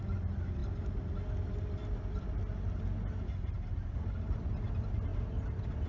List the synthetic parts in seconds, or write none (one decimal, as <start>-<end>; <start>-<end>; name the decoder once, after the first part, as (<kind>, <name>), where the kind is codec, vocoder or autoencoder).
none